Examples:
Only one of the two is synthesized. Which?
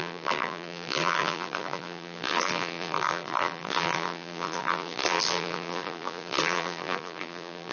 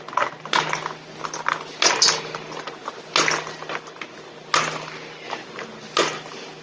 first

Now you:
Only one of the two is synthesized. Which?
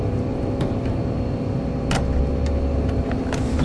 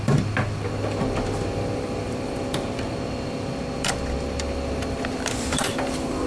second